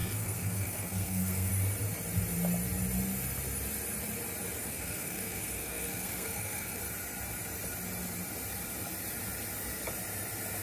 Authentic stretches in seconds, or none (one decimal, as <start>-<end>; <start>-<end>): 1.5-4.6; 6.8-10.6